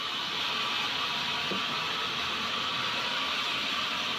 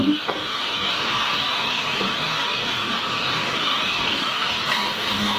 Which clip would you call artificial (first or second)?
second